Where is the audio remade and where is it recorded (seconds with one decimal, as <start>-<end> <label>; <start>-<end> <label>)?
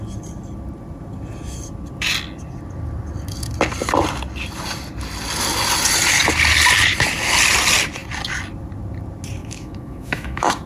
0.0-9.4 recorded; 9.4-10.7 remade